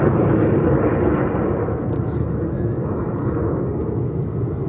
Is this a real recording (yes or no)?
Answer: yes